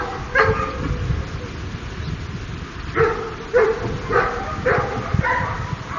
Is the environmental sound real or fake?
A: real